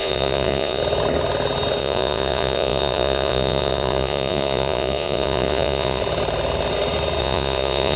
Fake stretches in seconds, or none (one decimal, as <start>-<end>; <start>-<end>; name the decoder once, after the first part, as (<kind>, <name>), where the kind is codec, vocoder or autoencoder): 0.0-0.8 (vocoder, Vocos); 1.8-6.0; 7.2-8.0